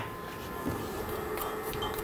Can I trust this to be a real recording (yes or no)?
yes